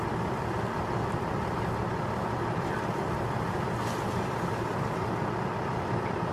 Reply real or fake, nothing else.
real